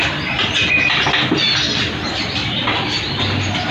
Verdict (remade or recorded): recorded